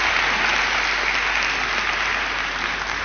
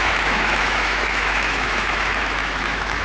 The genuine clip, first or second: first